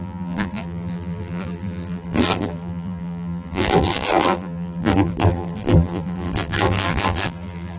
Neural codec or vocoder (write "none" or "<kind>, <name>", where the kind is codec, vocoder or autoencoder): vocoder, BigVGAN v2